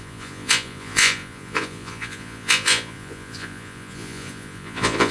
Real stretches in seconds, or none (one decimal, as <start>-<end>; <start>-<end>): none